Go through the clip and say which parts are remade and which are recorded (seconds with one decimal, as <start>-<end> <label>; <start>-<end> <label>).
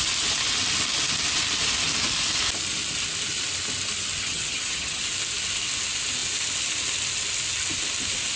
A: 0.0-4.2 recorded; 4.2-5.0 remade; 5.0-8.4 recorded